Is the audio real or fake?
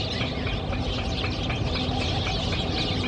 real